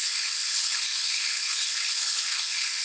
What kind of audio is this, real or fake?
fake